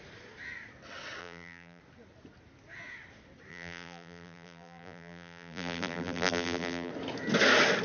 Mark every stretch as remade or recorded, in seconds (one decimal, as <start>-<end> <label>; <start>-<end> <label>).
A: 0.0-1.2 recorded; 1.2-1.8 remade; 1.8-3.5 recorded; 3.5-6.9 remade; 6.9-7.8 recorded